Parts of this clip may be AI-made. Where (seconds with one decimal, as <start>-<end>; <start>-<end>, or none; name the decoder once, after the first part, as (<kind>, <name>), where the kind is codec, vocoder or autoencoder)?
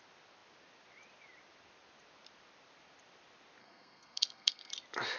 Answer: 3.6-4.7 (codec, SNAC)